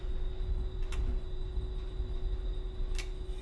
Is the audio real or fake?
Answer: real